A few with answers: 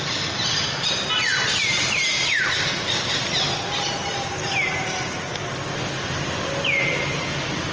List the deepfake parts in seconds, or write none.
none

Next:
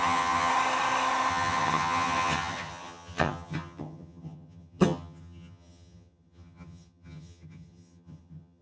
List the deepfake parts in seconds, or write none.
0.0-0.5 (vocoder, HiFi-GAN); 1.3-8.6

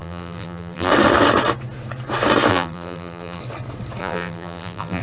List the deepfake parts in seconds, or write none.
0.0-0.9 (vocoder, BigVGAN v2); 2.5-3.4; 4.0-5.0

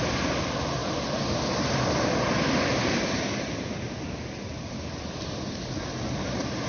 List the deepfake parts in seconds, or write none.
none